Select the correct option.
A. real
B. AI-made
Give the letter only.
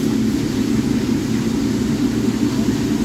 A